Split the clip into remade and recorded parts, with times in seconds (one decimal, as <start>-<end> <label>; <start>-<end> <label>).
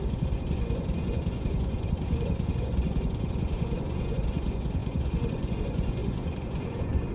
0.0-7.1 remade